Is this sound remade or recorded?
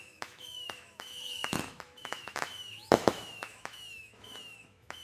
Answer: remade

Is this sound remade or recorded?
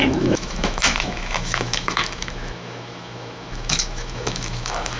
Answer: remade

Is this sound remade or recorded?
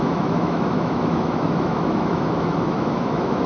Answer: remade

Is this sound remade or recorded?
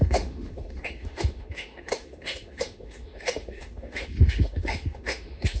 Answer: remade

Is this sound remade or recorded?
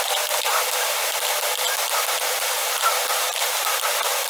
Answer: recorded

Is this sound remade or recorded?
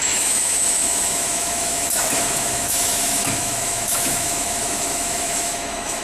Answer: remade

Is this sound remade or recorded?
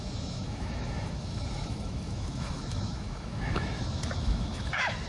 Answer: remade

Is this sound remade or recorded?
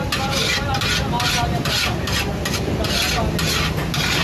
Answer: recorded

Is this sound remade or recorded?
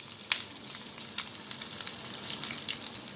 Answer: recorded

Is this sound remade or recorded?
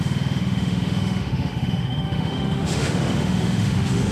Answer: remade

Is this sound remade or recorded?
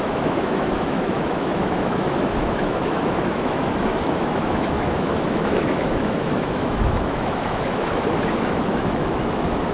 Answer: remade